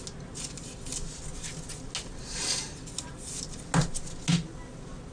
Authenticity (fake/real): real